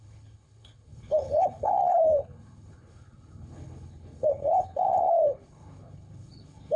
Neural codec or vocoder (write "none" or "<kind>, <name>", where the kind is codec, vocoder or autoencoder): codec, HILCodec